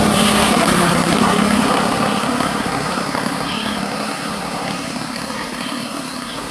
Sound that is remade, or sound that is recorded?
remade